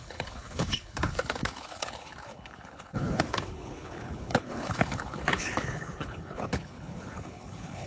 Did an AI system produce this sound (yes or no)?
yes